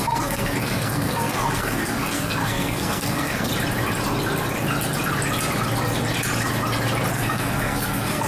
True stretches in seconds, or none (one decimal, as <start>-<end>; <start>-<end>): 3.5-7.1